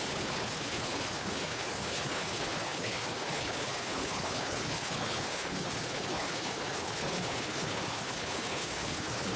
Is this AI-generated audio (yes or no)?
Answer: yes